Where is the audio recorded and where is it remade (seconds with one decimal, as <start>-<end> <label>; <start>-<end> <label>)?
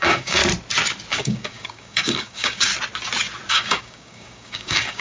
0.0-0.4 remade; 0.4-1.1 recorded; 1.1-2.7 remade; 2.7-3.5 recorded; 3.5-5.0 remade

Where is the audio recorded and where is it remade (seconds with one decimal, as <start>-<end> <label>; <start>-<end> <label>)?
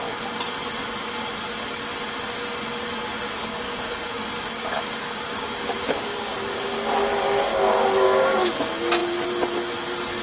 0.0-3.4 recorded; 3.4-6.7 remade; 6.7-7.5 recorded; 7.5-8.5 remade; 8.5-10.2 recorded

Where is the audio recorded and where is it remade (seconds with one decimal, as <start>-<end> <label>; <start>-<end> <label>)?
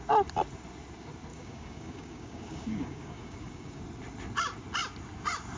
0.0-1.3 recorded; 1.3-3.8 remade; 3.8-5.6 recorded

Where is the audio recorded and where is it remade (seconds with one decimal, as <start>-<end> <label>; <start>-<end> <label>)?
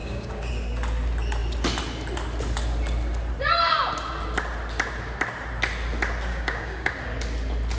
0.0-0.5 remade; 0.5-6.3 recorded; 6.3-6.9 remade; 6.9-7.8 recorded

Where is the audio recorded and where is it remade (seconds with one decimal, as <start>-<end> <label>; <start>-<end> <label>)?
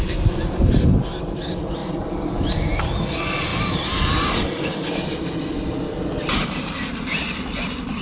0.0-8.0 recorded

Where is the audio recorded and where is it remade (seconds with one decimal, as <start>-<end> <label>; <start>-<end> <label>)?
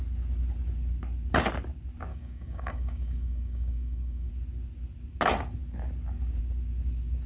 0.0-2.1 recorded; 2.1-4.3 remade; 4.3-7.3 recorded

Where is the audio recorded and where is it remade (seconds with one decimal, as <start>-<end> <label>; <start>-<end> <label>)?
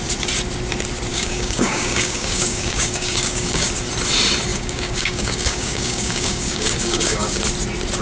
0.0-1.1 recorded; 1.1-3.7 remade; 3.7-4.5 recorded; 4.5-7.4 remade; 7.4-8.0 recorded